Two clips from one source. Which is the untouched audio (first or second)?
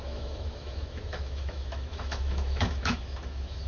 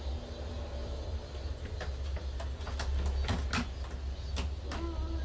second